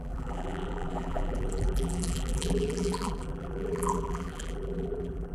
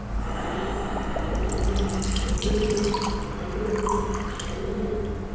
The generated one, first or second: first